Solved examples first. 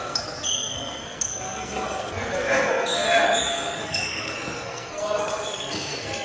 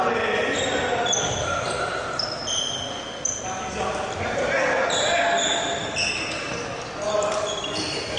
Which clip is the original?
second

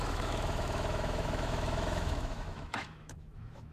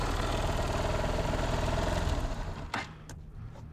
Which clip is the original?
second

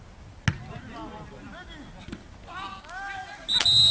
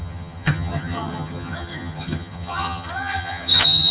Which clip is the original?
first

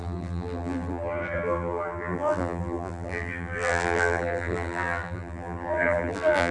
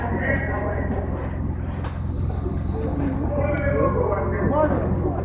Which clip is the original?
second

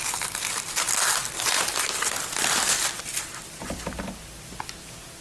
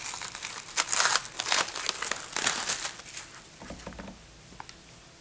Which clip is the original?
second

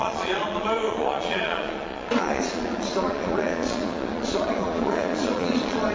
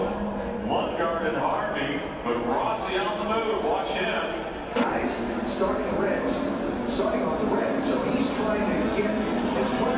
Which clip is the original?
second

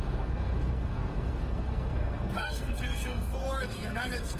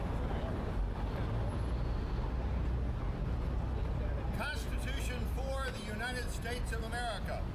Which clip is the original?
second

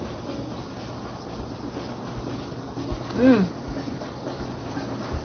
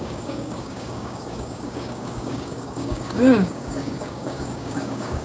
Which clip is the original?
first